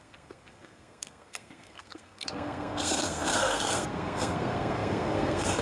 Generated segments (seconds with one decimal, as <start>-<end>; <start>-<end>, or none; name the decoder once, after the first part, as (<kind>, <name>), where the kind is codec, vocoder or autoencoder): 0.0-5.6 (codec, SNAC)